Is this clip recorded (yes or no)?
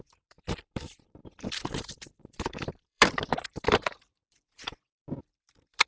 no